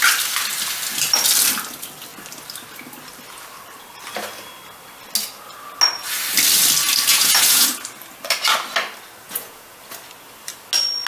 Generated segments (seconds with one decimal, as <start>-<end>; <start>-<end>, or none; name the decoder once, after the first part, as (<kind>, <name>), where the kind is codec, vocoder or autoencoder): 7.1-7.7 (vocoder, Vocos); 9.2-9.8